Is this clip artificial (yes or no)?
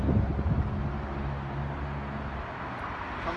no